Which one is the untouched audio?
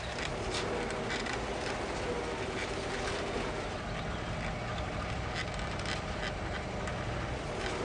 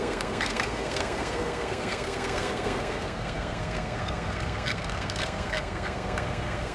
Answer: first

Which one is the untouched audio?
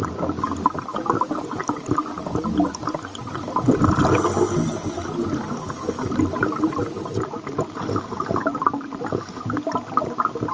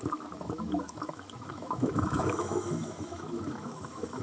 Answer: first